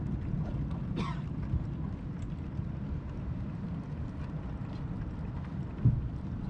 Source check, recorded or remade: recorded